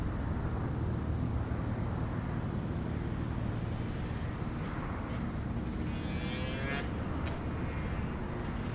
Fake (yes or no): no